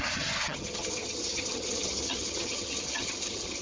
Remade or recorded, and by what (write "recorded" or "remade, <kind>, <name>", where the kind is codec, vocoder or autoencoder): remade, vocoder, HiFi-GAN